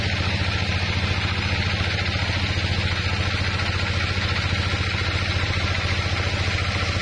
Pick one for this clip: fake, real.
real